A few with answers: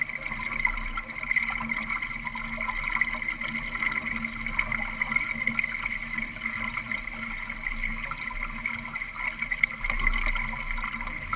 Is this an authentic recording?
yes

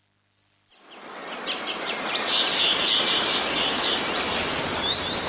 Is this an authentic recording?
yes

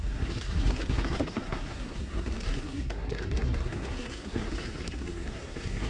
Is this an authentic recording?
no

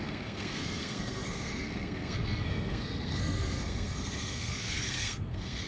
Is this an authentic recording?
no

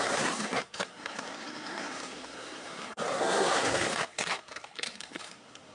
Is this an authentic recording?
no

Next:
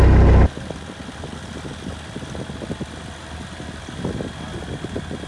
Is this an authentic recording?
yes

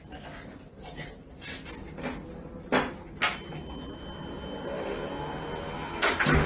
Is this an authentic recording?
yes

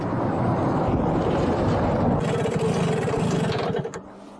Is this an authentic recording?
yes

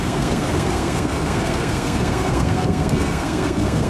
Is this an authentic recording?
no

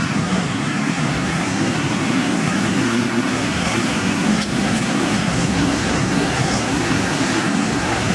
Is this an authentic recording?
no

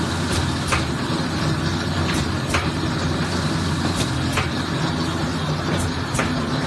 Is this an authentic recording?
yes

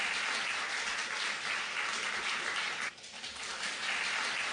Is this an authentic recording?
yes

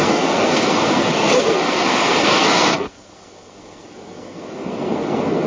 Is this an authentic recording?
no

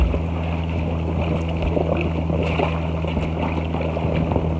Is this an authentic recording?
yes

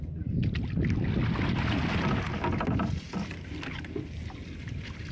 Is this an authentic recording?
yes